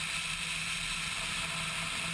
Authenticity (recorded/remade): recorded